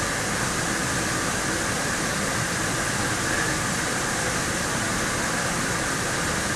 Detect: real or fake real